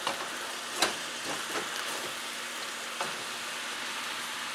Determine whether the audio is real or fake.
real